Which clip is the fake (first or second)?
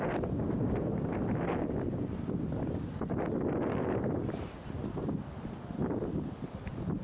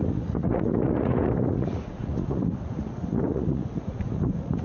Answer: second